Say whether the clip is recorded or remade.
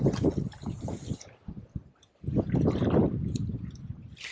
recorded